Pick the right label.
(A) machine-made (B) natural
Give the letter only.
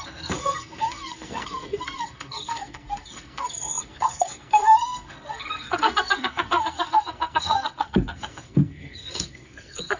A